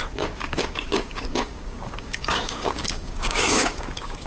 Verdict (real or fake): fake